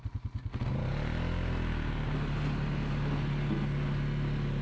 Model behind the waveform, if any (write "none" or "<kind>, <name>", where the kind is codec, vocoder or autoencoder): none